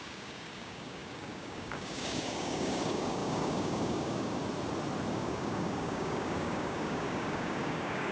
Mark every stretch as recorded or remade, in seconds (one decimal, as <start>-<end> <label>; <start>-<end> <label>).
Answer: 0.0-4.4 remade; 4.4-5.1 recorded; 5.1-8.1 remade